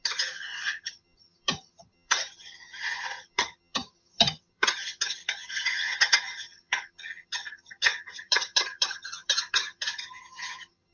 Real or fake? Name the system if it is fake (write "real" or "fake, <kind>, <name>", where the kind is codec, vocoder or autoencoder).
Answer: fake, vocoder, HiFi-GAN